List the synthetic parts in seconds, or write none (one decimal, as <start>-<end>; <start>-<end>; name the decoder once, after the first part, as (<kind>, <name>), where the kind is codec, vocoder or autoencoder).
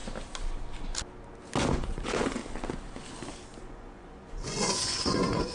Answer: 1.7-2.4 (vocoder, Vocos); 3.6-5.5